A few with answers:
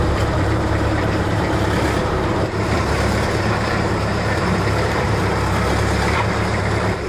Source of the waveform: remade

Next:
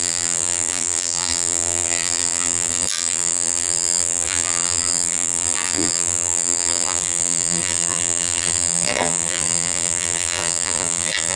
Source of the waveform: remade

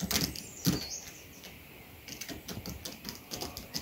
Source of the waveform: recorded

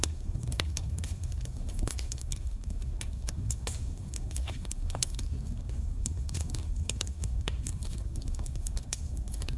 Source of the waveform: remade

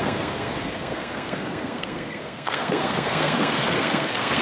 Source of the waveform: remade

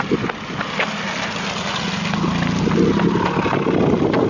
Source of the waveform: recorded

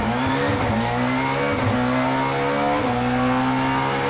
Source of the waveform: recorded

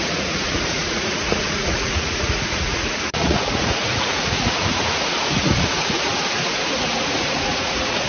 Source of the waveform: remade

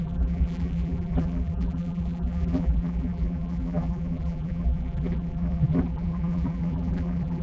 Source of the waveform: remade